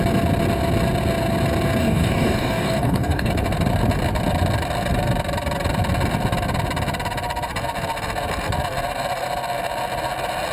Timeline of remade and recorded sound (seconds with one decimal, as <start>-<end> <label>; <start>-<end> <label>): 0.0-1.8 recorded; 1.8-3.3 remade; 3.3-10.5 recorded